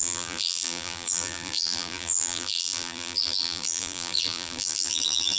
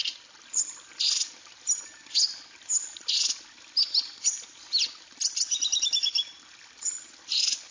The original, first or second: second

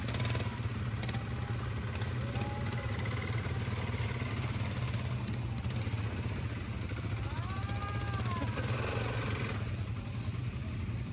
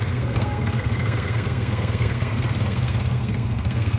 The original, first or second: first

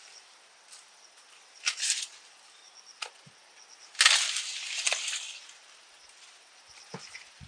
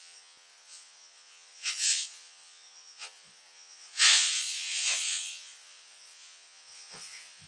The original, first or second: first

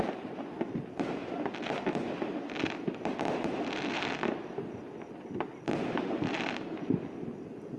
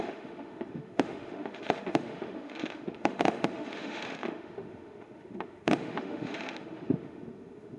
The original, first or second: first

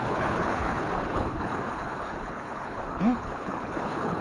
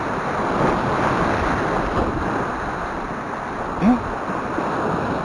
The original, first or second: second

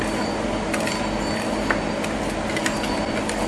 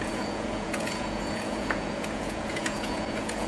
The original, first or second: first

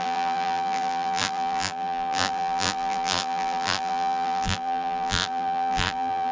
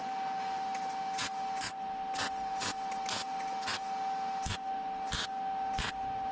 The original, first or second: second